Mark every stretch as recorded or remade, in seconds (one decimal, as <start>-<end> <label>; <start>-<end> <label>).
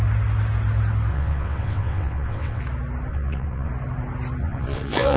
0.0-1.1 recorded; 1.1-2.6 remade; 2.6-3.1 recorded; 3.1-3.7 remade; 3.7-4.4 recorded; 4.4-5.2 remade